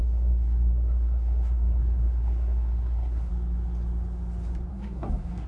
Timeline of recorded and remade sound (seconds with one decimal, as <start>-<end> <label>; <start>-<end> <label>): 0.0-3.3 remade; 3.3-4.7 recorded; 4.7-5.5 remade